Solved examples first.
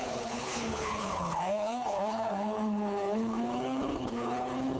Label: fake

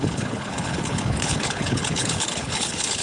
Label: fake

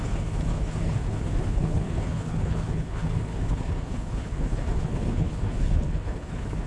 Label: fake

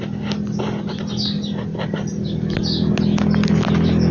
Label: real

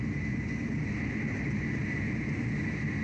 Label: real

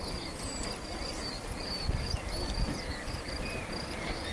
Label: real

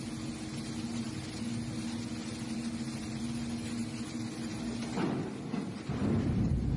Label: real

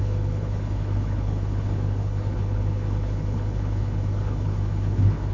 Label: fake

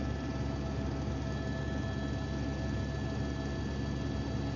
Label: real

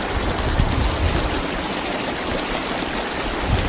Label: real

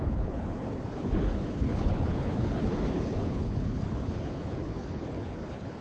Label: fake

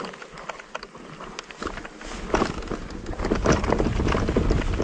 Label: real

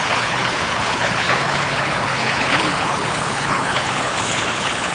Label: fake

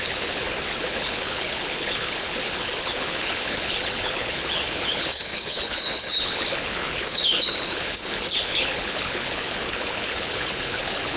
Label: fake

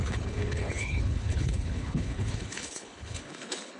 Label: fake